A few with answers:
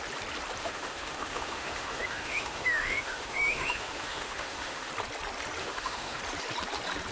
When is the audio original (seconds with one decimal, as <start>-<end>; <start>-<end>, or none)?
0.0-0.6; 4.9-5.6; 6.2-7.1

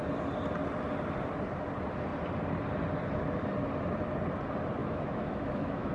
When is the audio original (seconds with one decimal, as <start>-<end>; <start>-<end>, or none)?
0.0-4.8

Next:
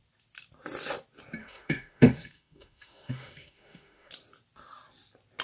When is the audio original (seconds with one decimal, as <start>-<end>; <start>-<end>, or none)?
0.0-1.4; 4.1-5.4

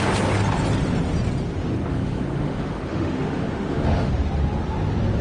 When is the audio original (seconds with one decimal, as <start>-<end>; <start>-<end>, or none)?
0.0-1.9; 4.1-5.2